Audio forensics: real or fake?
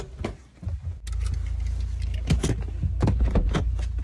real